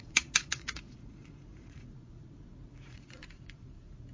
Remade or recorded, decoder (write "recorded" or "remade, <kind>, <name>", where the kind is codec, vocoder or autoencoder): remade, vocoder, Vocos